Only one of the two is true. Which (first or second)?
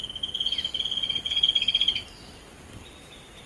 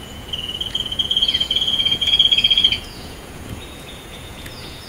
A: first